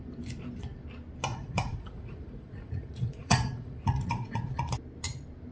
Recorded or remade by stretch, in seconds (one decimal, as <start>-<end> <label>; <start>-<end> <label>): 0.0-1.3 recorded; 1.3-4.6 remade; 4.6-5.5 recorded